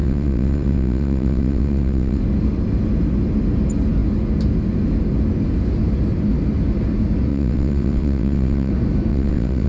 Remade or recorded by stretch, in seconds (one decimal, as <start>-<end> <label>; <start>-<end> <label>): 0.0-2.2 remade; 2.2-7.3 recorded; 7.3-8.7 remade; 8.7-9.1 recorded; 9.1-9.7 remade